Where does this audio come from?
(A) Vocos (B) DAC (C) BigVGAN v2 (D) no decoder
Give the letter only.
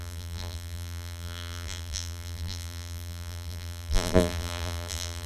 C